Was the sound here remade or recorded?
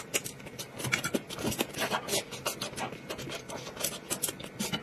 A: recorded